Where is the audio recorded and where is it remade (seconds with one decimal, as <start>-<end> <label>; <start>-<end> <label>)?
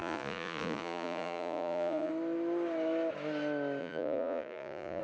0.0-2.1 remade; 2.1-3.8 recorded; 3.8-5.0 remade